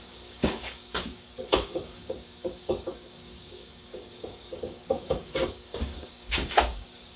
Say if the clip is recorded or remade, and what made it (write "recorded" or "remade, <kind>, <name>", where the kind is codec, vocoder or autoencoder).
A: remade, codec, DAC